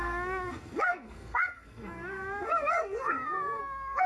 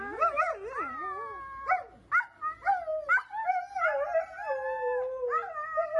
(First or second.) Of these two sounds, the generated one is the first